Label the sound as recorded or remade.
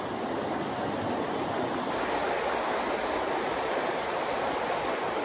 recorded